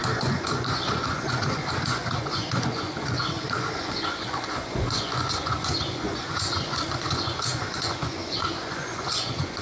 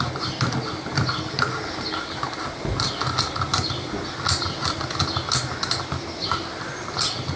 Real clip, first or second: second